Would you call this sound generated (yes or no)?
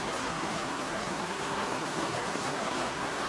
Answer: yes